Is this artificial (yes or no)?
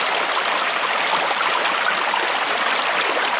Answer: no